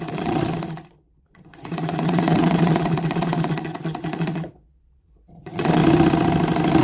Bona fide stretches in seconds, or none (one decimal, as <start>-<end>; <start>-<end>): 5.8-6.8